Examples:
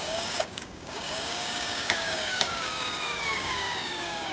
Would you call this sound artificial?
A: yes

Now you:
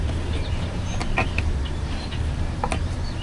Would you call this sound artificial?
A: yes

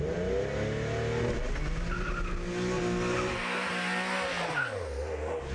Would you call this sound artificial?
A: no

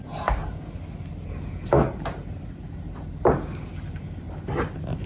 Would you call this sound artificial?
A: no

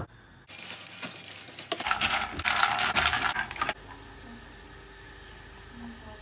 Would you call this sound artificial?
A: no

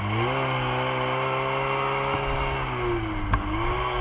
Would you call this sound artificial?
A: no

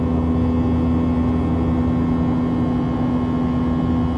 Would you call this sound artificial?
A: no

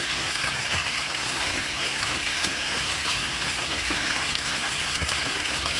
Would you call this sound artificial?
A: yes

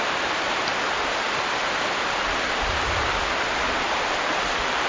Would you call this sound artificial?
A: no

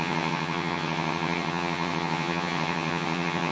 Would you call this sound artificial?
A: yes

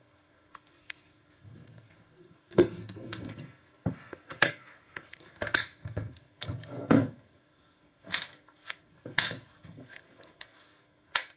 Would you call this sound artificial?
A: yes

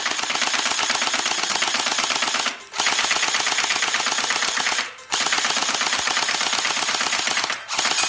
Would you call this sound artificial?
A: no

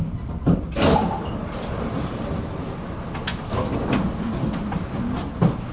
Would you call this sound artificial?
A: no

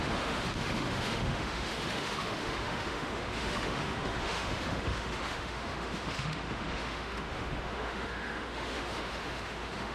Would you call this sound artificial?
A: yes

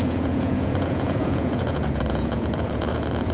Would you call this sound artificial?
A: yes